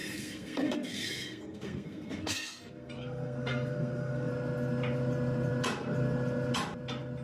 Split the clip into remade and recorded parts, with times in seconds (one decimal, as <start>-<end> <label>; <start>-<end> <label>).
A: 0.0-4.3 remade; 4.3-7.2 recorded